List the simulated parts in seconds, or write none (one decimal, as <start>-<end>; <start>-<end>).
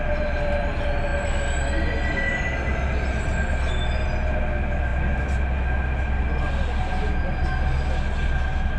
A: none